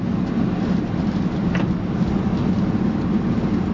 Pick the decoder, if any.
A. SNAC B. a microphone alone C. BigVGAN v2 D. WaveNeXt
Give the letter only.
B